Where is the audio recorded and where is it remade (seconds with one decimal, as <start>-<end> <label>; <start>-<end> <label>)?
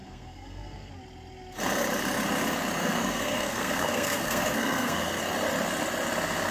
0.0-0.9 remade; 0.9-2.8 recorded; 2.8-5.2 remade; 5.2-6.5 recorded